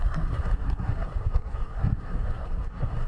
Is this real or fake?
fake